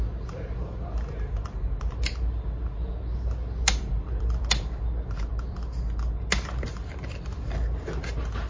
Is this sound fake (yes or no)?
no